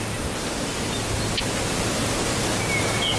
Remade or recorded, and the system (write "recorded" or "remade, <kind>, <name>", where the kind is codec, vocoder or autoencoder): recorded